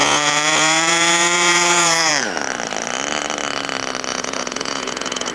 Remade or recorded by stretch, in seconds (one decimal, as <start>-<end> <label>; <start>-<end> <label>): 0.0-2.1 remade; 2.1-4.1 recorded; 4.1-5.3 remade

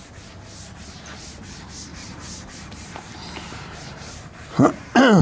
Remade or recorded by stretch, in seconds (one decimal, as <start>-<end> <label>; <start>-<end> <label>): 0.0-1.9 recorded; 1.9-5.2 remade

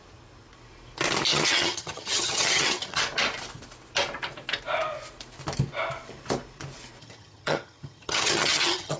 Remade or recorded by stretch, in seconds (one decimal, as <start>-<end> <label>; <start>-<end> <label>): 0.0-1.3 recorded; 1.3-3.0 remade; 3.0-7.0 recorded; 7.0-9.0 remade

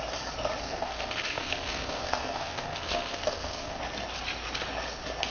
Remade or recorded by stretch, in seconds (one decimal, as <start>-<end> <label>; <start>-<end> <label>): 0.0-0.6 recorded; 0.6-3.8 remade; 3.8-5.3 recorded

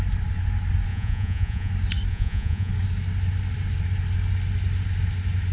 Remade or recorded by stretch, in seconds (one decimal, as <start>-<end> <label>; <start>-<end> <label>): 0.0-0.9 recorded; 0.9-1.7 remade; 1.7-2.1 recorded; 2.1-2.7 remade; 2.7-5.5 recorded

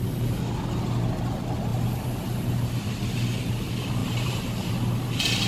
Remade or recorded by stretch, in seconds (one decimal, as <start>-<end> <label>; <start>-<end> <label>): 0.0-1.7 recorded; 1.7-2.8 remade; 2.8-4.0 recorded; 4.0-4.7 remade; 4.7-5.5 recorded

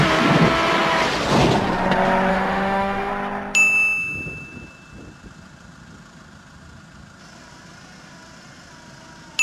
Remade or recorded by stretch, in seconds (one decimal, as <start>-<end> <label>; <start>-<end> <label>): 0.0-2.3 recorded; 2.3-3.1 remade; 3.1-9.4 recorded